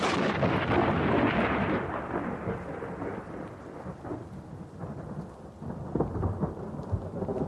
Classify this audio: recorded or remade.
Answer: recorded